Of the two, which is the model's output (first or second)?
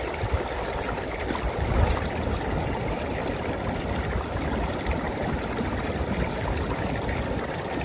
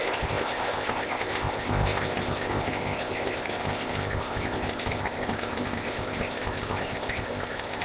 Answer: second